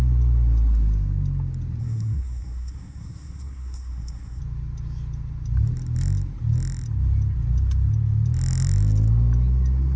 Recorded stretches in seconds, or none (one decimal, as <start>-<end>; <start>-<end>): 0.0-1.8; 4.4-10.0